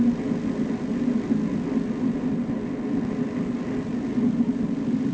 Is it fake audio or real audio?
real